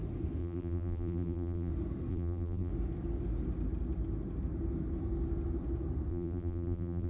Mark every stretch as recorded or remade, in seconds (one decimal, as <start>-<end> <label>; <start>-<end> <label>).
0.0-0.4 recorded; 0.4-1.7 remade; 1.7-2.1 recorded; 2.1-2.7 remade; 2.7-6.1 recorded; 6.1-7.1 remade